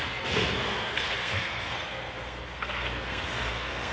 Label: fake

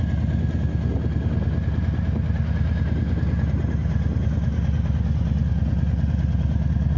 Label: real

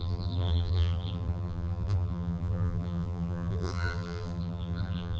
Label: fake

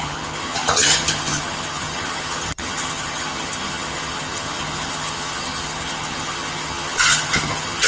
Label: fake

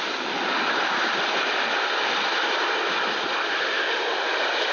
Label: fake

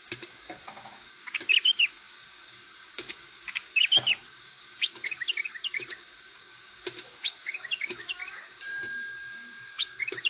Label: fake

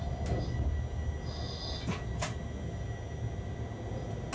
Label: real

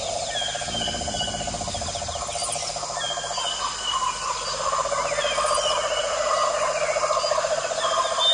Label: real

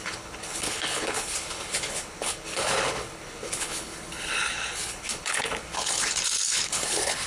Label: fake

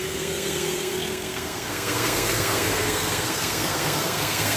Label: fake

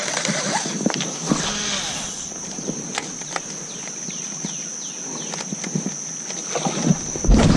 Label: real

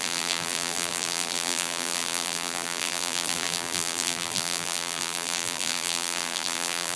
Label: fake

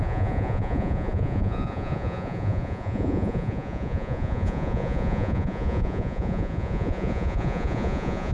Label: fake